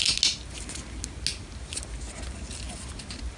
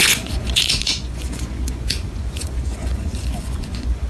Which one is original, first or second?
first